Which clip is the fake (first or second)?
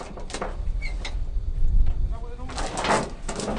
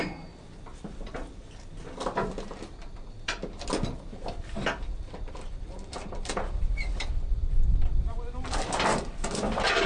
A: second